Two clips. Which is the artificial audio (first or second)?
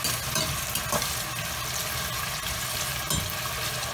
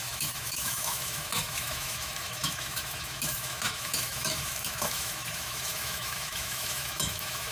second